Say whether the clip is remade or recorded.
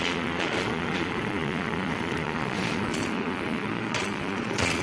remade